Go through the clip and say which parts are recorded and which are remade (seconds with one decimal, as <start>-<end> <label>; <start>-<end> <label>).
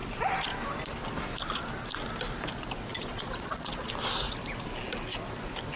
0.0-2.9 recorded; 2.9-3.9 remade; 3.9-5.8 recorded